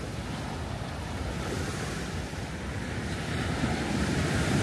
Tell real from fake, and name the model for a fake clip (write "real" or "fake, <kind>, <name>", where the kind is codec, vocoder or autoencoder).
real